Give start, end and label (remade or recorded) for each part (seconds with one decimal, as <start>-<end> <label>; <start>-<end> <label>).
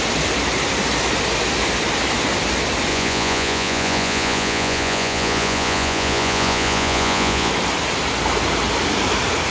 0.0-2.9 recorded; 2.9-7.5 remade; 7.5-9.5 recorded